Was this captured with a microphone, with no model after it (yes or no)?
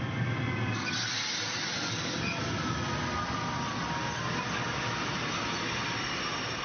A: yes